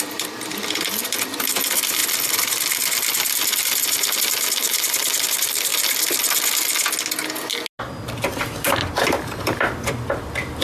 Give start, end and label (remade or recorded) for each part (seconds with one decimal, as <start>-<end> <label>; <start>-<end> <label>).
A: 0.0-2.0 remade; 2.0-3.8 recorded; 3.8-5.7 remade; 5.7-7.8 recorded; 7.8-10.6 remade